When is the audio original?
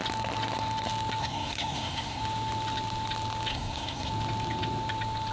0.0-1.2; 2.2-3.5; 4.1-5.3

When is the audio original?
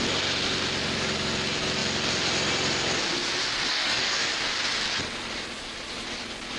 0.0-3.7; 4.3-6.6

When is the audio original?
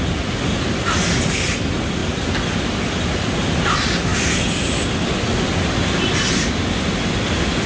0.0-7.7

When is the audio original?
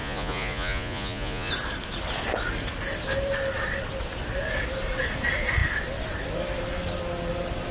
1.5-7.7